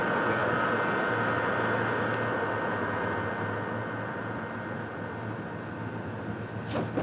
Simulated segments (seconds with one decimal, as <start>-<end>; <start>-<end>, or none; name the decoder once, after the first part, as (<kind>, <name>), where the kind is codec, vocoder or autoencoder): none